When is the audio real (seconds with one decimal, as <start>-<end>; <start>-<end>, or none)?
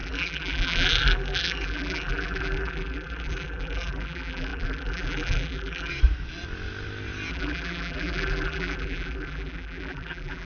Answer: 5.9-7.3